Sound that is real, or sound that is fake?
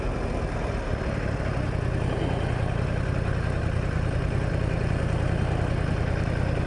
real